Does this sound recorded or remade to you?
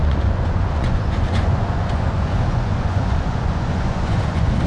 remade